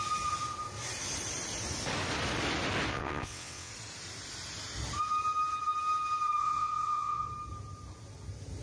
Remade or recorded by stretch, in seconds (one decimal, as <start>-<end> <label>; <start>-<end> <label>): 0.0-2.9 recorded; 2.9-3.7 remade; 3.7-6.4 recorded; 6.4-7.3 remade; 7.3-8.6 recorded